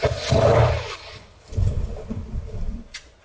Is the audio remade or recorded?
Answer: recorded